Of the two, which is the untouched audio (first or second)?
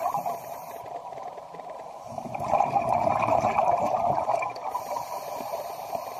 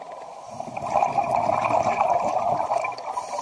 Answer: second